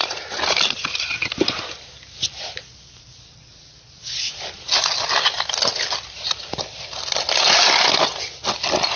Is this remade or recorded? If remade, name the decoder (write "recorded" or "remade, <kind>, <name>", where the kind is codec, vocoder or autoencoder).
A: recorded